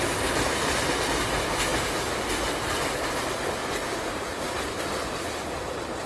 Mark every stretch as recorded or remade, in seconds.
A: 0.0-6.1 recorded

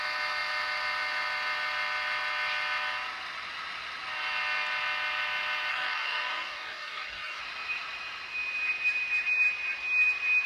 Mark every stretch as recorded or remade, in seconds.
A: 0.0-5.7 recorded; 5.7-7.4 remade; 7.4-10.5 recorded

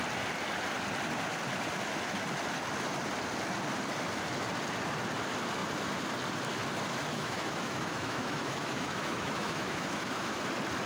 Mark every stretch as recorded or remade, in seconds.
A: 0.0-7.1 recorded; 7.1-10.4 remade; 10.4-10.9 recorded